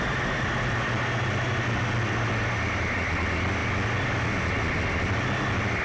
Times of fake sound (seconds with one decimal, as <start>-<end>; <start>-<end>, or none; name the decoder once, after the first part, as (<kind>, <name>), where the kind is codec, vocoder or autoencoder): none